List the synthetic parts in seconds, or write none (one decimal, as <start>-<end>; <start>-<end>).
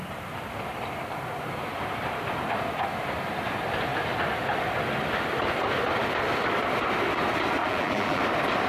7.6-8.2